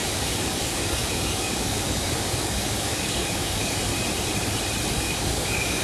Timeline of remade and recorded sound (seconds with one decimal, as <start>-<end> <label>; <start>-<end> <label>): 0.0-3.9 remade; 3.9-4.9 recorded; 4.9-5.8 remade